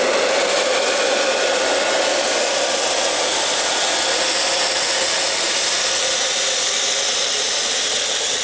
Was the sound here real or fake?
real